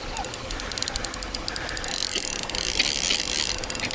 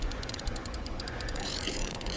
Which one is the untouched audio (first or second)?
first